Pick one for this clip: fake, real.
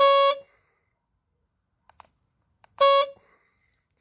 real